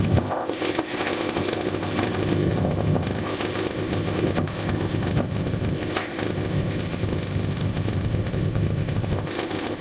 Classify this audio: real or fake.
fake